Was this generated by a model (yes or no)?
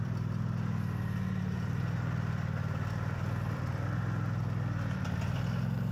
yes